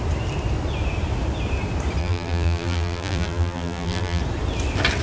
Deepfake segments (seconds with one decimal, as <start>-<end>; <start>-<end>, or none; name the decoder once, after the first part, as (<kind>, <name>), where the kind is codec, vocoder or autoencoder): 2.0-4.2 (vocoder, BigVGAN v2)